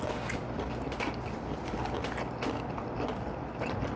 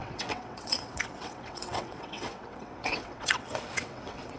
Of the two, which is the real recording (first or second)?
first